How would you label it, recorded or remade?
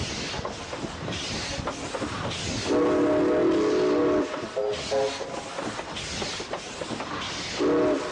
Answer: recorded